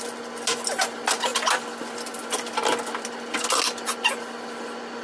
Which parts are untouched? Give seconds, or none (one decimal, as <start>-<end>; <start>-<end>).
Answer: 0.0-5.0